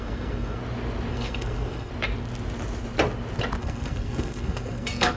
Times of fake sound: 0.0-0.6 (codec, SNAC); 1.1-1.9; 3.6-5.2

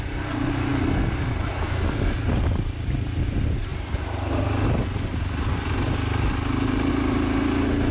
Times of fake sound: none

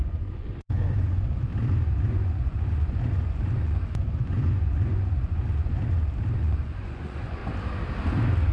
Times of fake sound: 0.0-1.5 (vocoder, Vocos); 2.0-5.8; 6.4-7.4

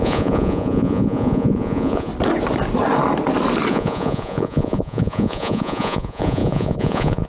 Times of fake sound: 0.0-2.1 (vocoder, Vocos); 3.7-7.3